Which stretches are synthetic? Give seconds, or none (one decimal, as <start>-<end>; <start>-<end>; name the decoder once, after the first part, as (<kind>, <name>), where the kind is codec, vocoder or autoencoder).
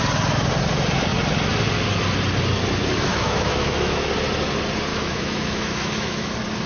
3.1-4.1 (autoencoder, DAC-VAE); 4.9-6.3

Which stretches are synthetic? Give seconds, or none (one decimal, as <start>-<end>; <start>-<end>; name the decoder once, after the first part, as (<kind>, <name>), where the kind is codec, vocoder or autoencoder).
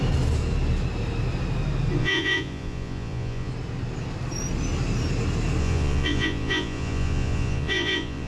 2.0-3.5 (vocoder, Vocos); 5.6-8.3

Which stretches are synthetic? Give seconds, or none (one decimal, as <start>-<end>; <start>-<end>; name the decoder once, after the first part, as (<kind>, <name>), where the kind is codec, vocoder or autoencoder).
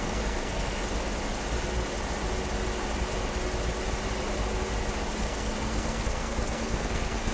0.0-0.8 (codec, SNAC); 5.2-7.3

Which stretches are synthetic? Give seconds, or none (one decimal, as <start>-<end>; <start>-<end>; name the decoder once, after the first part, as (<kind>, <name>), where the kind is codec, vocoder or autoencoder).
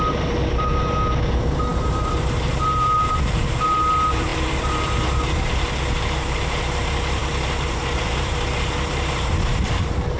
0.0-10.2 (vocoder, BigVGAN v2)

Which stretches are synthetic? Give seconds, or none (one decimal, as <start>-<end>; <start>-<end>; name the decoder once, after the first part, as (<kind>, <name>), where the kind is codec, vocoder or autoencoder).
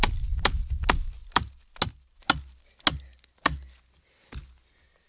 none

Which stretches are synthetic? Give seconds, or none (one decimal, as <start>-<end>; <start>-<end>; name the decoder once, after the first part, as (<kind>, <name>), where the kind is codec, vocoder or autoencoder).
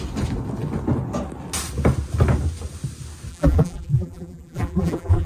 3.3-5.3 (vocoder, BigVGAN v2)